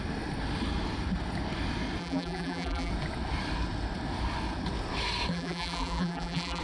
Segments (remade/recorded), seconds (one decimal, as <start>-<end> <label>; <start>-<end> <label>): 0.0-2.0 recorded; 2.0-2.9 remade; 2.9-5.3 recorded; 5.3-6.6 remade